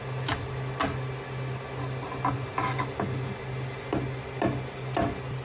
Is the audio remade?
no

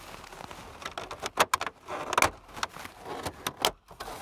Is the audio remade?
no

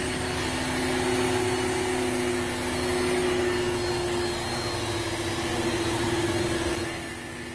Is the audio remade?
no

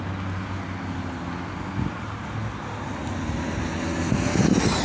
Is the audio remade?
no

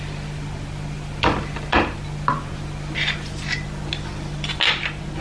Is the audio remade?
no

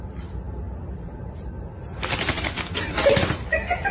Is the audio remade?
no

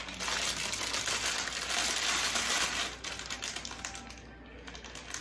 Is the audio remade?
no